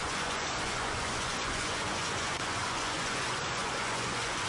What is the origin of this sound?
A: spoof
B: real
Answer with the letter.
A